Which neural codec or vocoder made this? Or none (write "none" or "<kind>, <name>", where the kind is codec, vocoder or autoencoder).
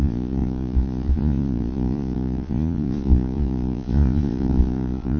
vocoder, Vocos